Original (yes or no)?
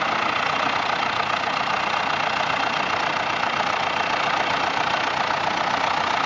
yes